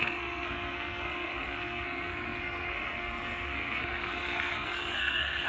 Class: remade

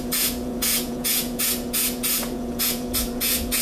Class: remade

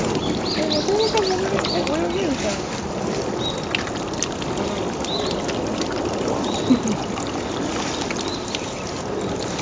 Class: recorded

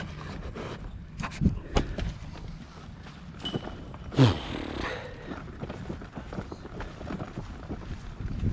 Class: recorded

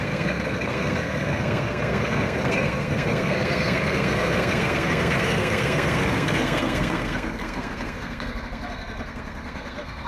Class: remade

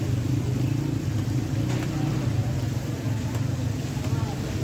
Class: recorded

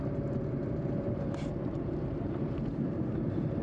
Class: remade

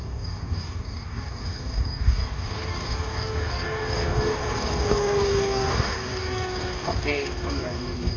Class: remade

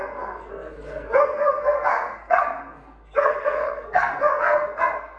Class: remade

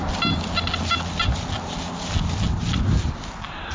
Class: recorded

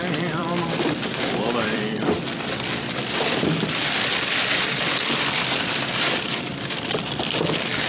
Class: remade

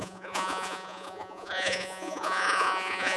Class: remade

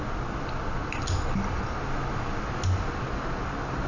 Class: recorded